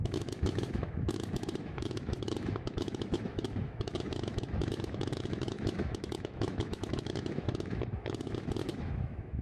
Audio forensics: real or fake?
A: fake